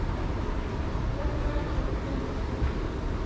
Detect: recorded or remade recorded